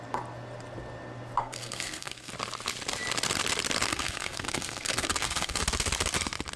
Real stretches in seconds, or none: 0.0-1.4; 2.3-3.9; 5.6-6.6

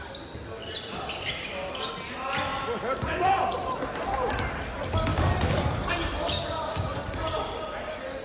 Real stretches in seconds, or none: 0.0-8.2

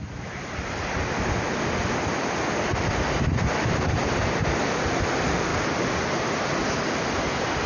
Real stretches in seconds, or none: 0.0-7.7

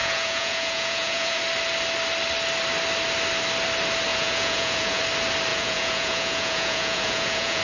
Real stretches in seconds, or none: 1.4-4.1; 5.0-5.5

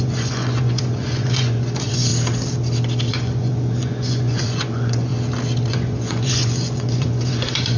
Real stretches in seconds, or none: 2.1-3.1; 5.1-5.7

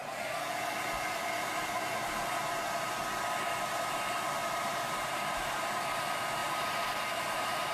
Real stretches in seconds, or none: 0.0-4.4; 6.0-6.4

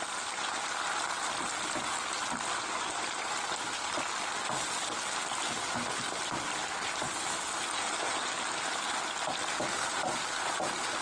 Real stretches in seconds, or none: 0.0-9.9; 10.5-11.0